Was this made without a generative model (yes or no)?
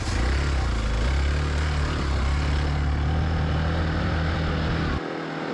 yes